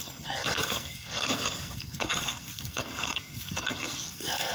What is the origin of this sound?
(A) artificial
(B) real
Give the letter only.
A